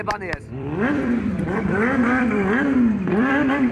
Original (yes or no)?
no